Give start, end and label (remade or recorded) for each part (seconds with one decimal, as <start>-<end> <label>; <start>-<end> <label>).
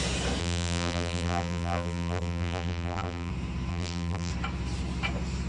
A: 0.0-0.4 recorded; 0.4-3.3 remade; 3.3-3.7 recorded; 3.7-4.3 remade; 4.3-5.5 recorded